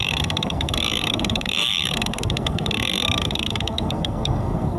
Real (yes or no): no